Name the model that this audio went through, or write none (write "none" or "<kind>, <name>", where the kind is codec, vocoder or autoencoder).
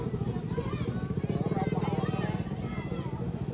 none